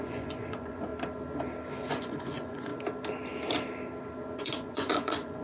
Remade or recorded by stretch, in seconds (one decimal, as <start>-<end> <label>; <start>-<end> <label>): 0.0-0.9 remade; 0.9-1.9 recorded; 1.9-2.7 remade; 2.7-4.4 recorded; 4.4-5.4 remade